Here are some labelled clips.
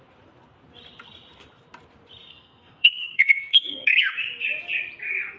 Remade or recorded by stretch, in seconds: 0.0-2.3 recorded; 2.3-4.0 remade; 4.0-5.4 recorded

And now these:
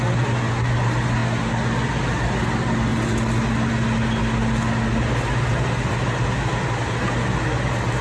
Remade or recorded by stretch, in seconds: 0.0-8.0 recorded

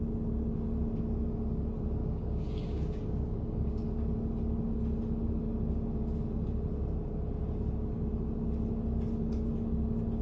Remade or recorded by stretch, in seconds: 0.0-2.0 recorded; 2.0-3.9 remade; 3.9-10.2 recorded

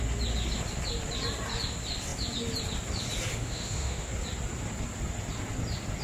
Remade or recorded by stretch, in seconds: 0.0-3.3 recorded; 3.3-4.1 remade; 4.1-6.0 recorded